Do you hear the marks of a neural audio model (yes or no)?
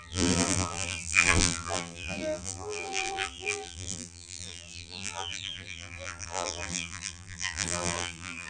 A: yes